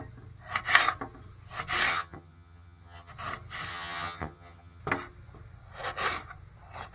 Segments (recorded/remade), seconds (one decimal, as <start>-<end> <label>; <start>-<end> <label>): 0.0-1.9 recorded; 1.9-3.1 remade; 3.1-3.7 recorded; 3.7-4.8 remade; 4.8-6.9 recorded